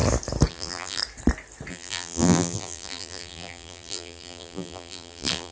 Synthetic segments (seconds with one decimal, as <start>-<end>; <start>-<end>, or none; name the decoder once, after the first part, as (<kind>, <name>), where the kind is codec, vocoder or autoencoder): 0.5-1.0 (vocoder, BigVGAN v2); 1.7-5.5